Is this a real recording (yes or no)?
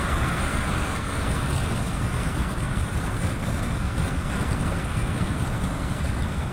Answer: no